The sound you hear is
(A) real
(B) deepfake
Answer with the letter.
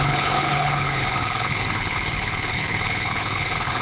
B